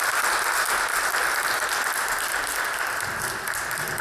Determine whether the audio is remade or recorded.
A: recorded